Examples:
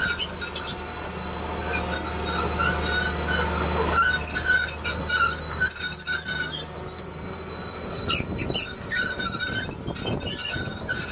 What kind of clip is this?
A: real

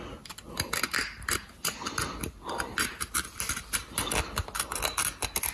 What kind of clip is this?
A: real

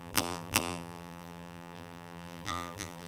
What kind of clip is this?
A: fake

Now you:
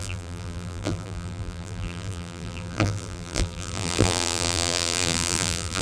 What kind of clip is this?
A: fake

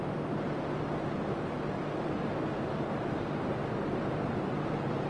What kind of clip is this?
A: real